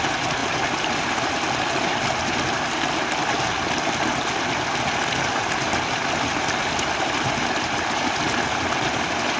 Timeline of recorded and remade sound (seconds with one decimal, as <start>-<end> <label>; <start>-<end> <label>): 0.0-9.4 recorded